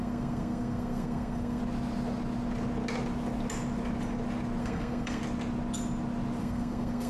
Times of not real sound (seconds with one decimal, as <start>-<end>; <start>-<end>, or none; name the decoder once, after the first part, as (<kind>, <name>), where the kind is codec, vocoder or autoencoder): 0.0-1.6 (codec, SNAC); 4.6-5.2; 6.4-7.1